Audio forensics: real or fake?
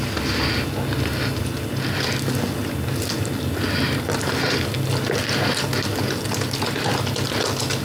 real